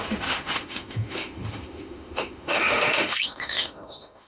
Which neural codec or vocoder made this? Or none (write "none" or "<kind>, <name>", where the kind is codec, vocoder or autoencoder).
autoencoder, DAC-VAE